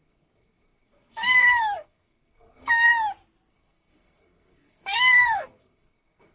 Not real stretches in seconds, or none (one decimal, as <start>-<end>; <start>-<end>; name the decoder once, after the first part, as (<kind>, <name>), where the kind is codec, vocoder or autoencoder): 0.0-2.9 (codec, SNAC); 3.5-6.3